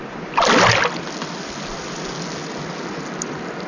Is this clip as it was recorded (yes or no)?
yes